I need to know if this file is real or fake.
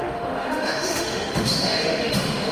fake